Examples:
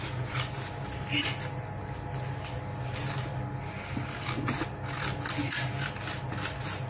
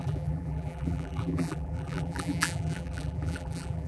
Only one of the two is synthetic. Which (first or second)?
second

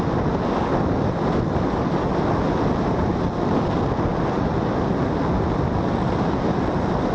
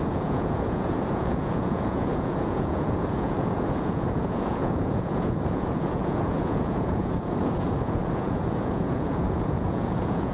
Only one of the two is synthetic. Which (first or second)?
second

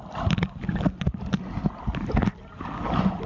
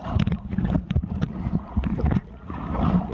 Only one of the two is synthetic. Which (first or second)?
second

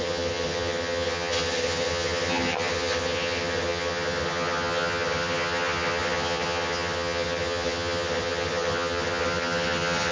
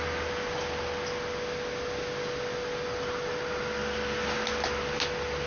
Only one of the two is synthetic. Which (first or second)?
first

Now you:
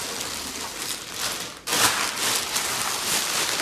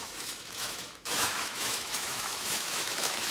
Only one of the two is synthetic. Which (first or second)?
second